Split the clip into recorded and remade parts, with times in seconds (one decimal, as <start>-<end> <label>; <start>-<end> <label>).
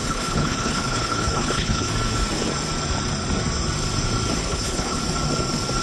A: 0.0-1.9 remade; 1.9-4.4 recorded; 4.4-5.0 remade; 5.0-5.8 recorded